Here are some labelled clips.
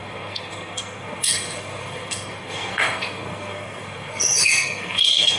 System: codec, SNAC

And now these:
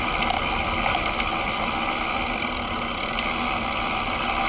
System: none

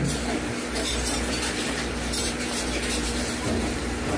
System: vocoder, BigVGAN v2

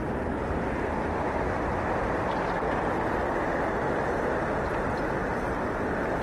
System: none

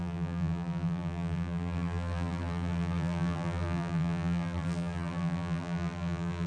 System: vocoder, BigVGAN v2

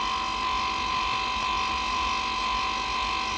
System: none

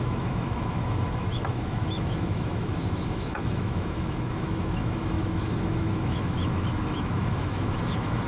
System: autoencoder, DAC-VAE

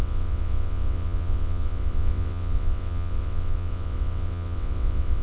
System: vocoder, WaveNeXt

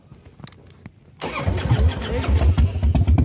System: none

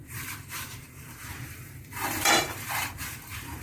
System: vocoder, BigVGAN v2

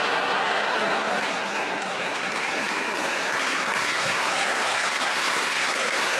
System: codec, SNAC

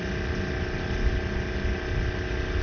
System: none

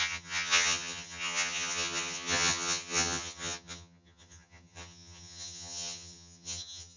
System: vocoder, HiFi-GAN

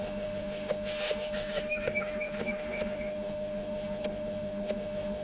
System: autoencoder, DAC-VAE